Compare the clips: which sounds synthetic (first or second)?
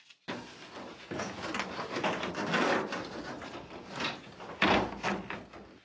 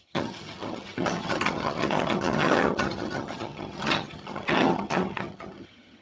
second